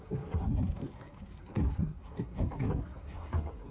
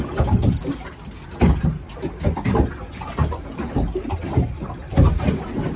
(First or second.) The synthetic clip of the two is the first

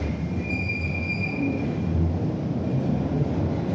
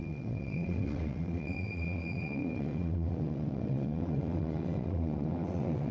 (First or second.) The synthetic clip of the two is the second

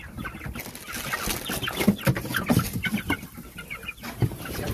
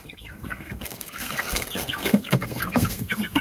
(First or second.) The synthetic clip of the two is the second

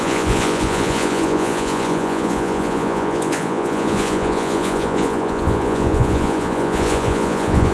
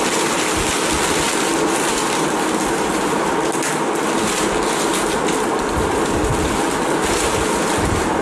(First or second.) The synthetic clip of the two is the first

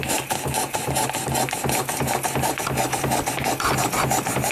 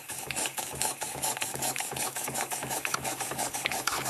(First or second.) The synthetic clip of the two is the second